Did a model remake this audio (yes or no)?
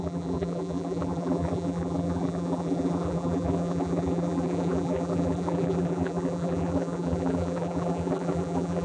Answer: yes